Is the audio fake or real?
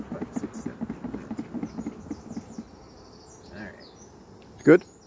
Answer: real